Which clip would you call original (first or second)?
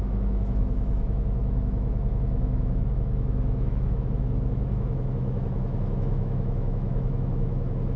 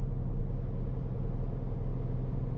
second